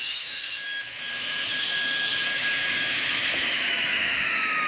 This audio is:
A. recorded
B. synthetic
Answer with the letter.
B